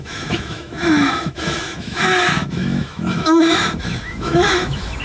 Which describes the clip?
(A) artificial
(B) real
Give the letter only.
A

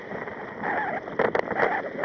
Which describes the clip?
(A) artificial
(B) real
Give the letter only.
B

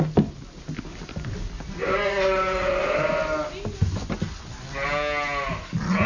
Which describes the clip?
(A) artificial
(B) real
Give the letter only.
B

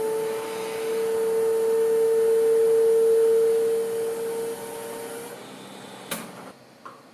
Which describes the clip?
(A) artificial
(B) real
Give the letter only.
B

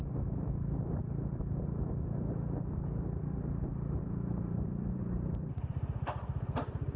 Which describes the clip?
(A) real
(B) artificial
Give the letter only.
B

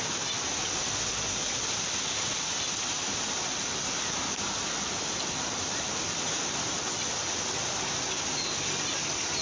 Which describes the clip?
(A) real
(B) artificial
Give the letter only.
A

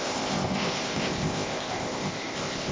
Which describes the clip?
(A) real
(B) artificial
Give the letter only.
B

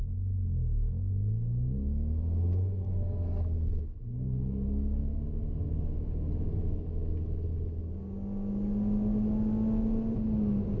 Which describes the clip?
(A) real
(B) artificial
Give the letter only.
A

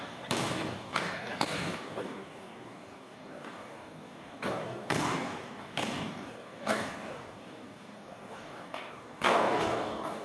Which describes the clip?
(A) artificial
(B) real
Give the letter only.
A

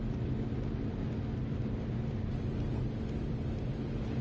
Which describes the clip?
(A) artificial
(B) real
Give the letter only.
B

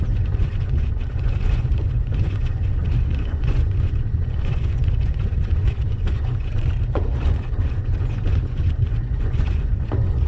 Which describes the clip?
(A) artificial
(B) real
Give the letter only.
A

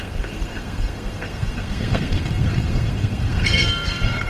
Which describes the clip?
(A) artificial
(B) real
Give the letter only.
A